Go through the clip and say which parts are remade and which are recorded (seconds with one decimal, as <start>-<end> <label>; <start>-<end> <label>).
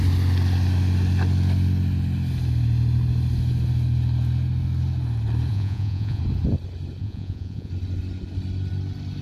0.0-5.5 recorded; 5.5-6.2 remade; 6.2-7.0 recorded; 7.0-7.7 remade; 7.7-9.2 recorded